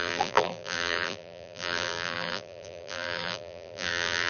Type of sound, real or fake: fake